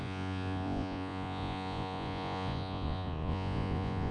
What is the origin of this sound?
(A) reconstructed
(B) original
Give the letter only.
A